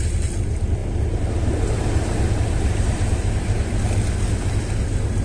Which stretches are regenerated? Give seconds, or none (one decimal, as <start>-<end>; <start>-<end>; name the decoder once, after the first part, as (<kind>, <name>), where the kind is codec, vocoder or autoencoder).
none